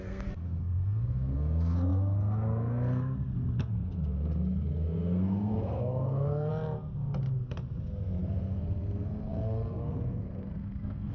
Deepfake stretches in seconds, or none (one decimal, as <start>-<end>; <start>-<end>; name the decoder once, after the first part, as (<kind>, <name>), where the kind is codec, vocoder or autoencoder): 0.0-6.5 (codec, SNAC); 8.2-11.1